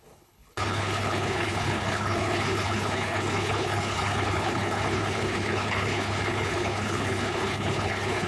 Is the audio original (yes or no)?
no